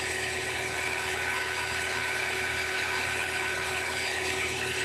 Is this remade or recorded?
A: remade